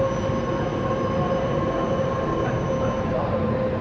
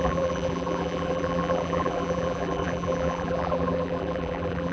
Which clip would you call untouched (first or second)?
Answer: first